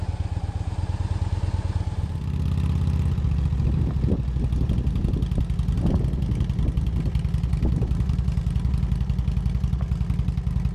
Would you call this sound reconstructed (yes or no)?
no